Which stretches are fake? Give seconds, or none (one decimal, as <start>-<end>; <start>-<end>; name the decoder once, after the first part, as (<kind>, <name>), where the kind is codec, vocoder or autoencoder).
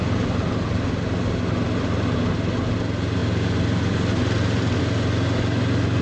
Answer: none